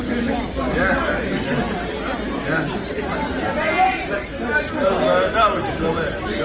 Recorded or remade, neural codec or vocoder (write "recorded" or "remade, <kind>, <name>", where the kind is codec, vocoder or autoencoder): recorded